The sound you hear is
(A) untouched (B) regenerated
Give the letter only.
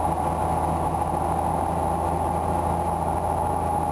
A